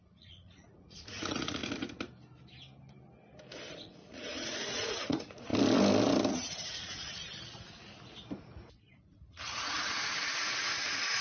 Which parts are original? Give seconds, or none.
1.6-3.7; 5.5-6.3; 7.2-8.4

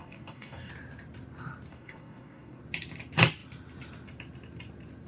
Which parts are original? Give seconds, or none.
0.7-1.7; 2.6-5.1

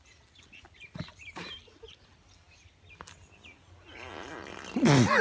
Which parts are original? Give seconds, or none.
0.0-5.2

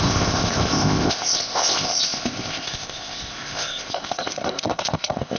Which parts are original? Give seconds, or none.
none